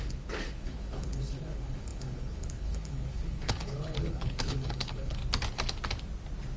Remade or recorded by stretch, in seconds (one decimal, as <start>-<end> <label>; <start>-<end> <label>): 0.0-5.2 remade; 5.2-6.6 recorded